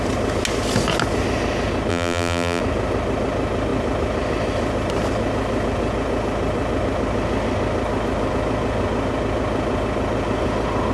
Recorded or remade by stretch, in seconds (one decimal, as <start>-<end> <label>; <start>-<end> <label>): 0.0-1.9 recorded; 1.9-2.6 remade; 2.6-10.9 recorded